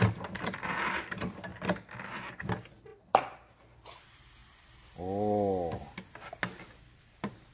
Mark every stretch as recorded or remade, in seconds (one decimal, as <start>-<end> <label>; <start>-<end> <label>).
0.0-1.5 remade; 1.5-2.1 recorded; 2.1-4.4 remade; 4.4-6.8 recorded; 6.8-7.5 remade